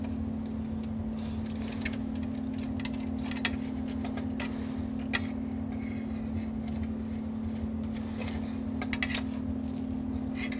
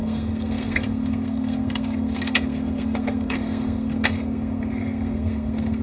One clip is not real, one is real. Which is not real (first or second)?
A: second